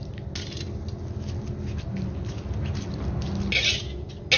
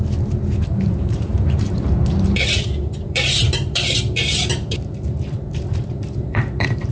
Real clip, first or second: first